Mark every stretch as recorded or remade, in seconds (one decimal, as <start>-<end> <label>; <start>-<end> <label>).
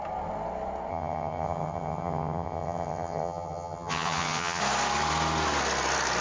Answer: 0.0-0.9 recorded; 0.9-4.6 remade; 4.6-6.2 recorded